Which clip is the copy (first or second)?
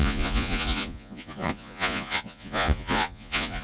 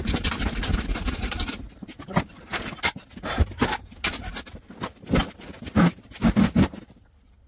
first